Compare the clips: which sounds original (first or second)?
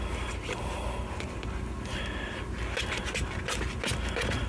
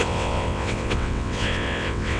first